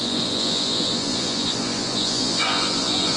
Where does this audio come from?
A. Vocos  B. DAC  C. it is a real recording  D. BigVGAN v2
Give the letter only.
A